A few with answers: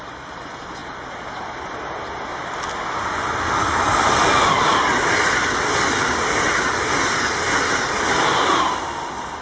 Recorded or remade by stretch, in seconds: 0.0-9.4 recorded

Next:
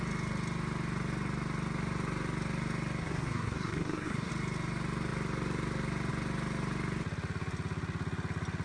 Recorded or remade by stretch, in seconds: 0.0-3.0 recorded; 3.0-4.3 remade; 4.3-8.6 recorded

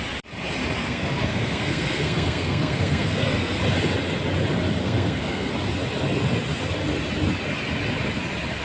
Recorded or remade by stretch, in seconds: 0.0-0.8 recorded; 0.8-3.6 remade; 3.6-4.8 recorded; 4.8-5.5 remade; 5.5-8.6 recorded

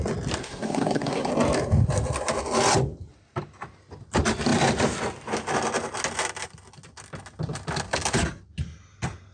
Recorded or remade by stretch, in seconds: 0.0-0.4 recorded; 0.4-1.3 remade; 1.3-9.3 recorded